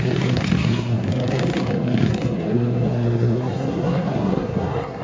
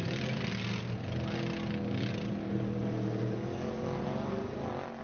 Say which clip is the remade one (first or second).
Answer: first